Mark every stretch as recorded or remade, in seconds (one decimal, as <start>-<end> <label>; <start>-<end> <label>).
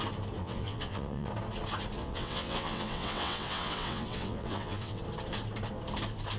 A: 0.0-0.4 recorded; 0.4-1.3 remade; 1.3-2.0 recorded; 2.0-5.0 remade; 5.0-6.4 recorded